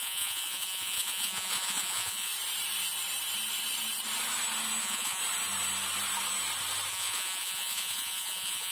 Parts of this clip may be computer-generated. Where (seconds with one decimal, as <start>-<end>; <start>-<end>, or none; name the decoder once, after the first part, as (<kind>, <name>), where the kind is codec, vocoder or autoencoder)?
0.0-2.3 (vocoder, Vocos); 4.8-5.2; 6.9-8.7

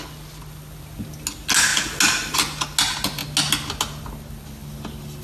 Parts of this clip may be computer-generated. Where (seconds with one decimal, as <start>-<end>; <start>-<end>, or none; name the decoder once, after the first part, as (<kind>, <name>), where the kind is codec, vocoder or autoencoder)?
none

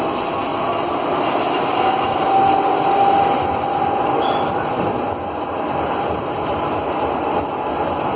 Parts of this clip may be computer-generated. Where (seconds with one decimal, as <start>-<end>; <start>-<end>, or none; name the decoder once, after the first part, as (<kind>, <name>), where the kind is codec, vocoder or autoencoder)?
none

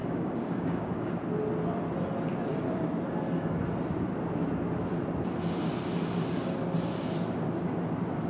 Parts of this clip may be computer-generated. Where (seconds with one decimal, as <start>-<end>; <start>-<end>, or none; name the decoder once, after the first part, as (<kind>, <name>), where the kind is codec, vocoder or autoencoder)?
0.0-1.1 (codec, DAC)